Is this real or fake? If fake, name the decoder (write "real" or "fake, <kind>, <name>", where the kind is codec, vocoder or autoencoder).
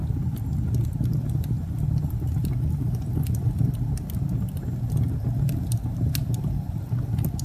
real